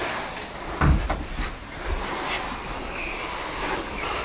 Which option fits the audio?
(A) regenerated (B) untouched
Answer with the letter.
B